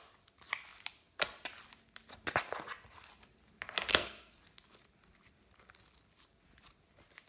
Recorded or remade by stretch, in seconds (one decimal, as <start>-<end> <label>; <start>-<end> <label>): 0.0-3.9 recorded; 3.9-4.4 remade; 4.4-7.3 recorded